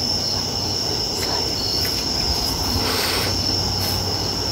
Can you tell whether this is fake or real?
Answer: real